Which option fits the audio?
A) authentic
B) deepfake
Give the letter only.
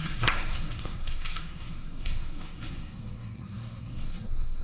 B